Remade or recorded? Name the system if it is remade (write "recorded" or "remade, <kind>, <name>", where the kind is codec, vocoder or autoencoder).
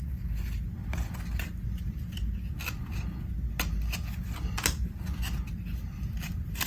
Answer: recorded